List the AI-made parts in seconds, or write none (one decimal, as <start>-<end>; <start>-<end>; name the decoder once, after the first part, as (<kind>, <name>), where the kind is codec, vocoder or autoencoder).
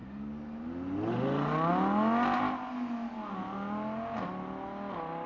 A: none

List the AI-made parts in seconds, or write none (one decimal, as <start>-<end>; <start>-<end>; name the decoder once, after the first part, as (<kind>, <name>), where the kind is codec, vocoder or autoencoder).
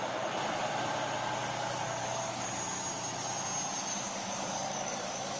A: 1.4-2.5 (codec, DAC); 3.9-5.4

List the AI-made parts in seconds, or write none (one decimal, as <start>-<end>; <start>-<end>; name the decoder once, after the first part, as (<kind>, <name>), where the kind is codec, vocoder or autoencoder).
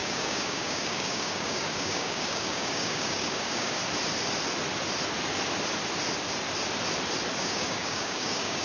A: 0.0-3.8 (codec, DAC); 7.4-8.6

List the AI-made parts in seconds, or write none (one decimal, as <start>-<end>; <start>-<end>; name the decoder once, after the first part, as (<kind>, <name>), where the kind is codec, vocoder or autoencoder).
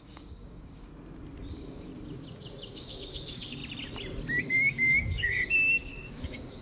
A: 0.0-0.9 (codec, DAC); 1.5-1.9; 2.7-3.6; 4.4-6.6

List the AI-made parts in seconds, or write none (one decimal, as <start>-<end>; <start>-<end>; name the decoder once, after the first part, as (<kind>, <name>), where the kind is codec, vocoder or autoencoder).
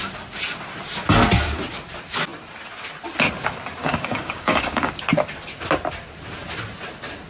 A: 3.8-4.9 (codec, DAC)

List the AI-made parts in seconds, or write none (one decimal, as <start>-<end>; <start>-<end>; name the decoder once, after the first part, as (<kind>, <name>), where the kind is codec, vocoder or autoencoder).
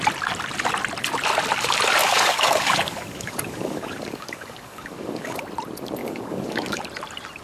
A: 2.0-5.4 (codec, DAC); 6.0-6.8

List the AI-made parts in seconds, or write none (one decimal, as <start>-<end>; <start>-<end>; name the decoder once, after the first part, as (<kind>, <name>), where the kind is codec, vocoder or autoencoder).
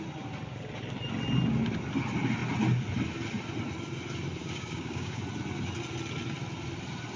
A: 4.4-5.2 (codec, DAC)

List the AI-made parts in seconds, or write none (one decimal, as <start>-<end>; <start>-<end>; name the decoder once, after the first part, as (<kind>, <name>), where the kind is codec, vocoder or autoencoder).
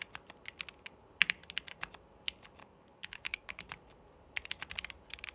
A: 2.6-3.6 (codec, DAC)